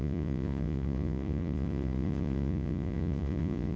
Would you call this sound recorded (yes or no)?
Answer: no